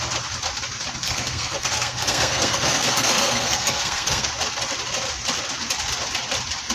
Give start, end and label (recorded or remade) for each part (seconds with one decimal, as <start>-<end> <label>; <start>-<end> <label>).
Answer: 0.0-1.0 recorded; 1.0-4.3 remade; 4.3-6.7 recorded